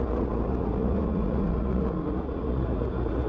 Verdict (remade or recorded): remade